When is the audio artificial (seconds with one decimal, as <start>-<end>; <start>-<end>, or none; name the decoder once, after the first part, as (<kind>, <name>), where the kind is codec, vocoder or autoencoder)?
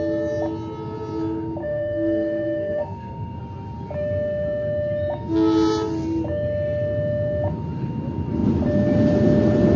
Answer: 1.6-3.4 (codec, SNAC)